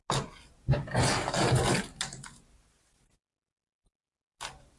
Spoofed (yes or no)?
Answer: no